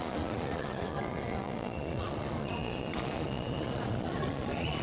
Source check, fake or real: fake